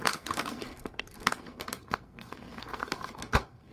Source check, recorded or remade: remade